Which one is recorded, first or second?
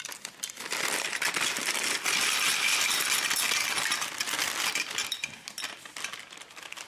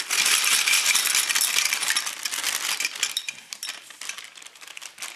first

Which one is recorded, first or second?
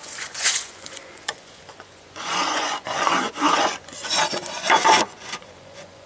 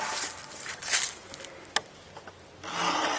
second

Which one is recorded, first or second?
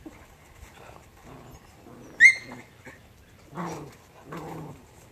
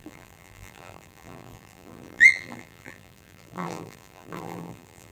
first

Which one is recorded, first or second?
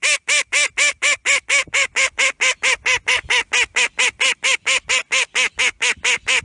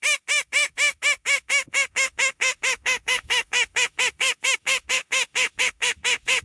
first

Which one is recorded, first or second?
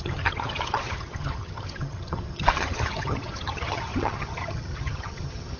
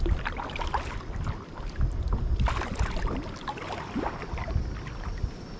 second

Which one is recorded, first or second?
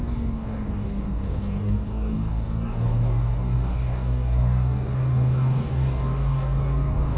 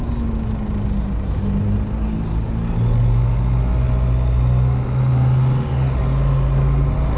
second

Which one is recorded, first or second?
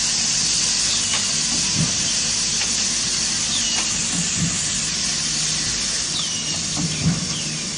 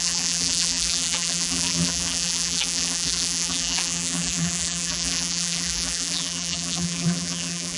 first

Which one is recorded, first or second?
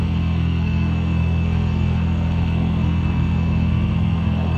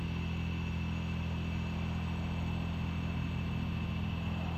second